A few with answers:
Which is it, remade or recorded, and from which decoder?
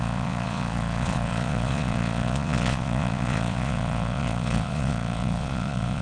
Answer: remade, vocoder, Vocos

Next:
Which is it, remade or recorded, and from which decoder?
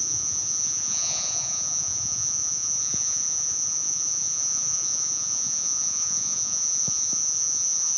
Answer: remade, vocoder, Vocos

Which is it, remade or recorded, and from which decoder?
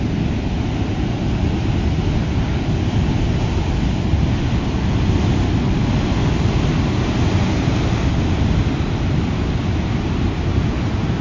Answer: recorded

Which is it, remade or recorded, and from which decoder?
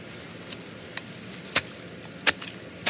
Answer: recorded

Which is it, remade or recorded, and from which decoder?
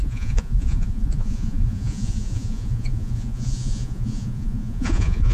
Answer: remade, vocoder, Vocos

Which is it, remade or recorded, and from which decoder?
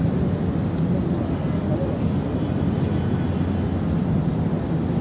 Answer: recorded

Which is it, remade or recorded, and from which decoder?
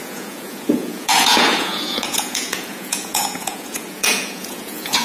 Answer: remade, vocoder, Vocos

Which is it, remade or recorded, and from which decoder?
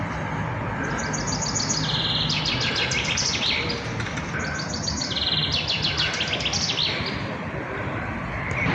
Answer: recorded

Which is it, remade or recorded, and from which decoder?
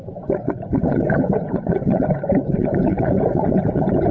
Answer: remade, vocoder, Vocos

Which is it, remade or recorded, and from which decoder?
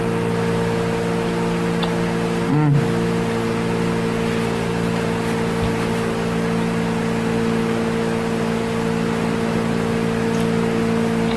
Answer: recorded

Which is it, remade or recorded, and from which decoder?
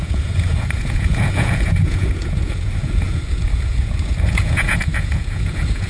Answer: remade, vocoder, Vocos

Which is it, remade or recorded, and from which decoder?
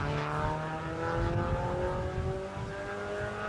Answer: recorded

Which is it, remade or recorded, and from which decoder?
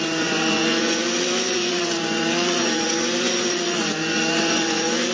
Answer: remade, vocoder, Vocos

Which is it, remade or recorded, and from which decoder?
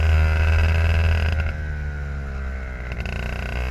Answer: recorded